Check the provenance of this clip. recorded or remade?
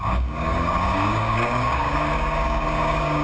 remade